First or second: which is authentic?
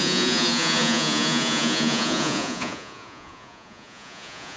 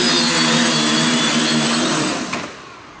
second